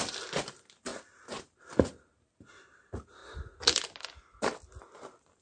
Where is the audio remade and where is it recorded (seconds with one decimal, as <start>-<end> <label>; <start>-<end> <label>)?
0.0-5.4 recorded